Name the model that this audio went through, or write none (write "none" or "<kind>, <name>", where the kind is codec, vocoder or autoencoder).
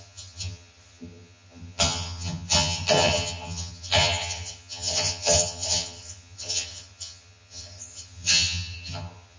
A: vocoder, HiFi-GAN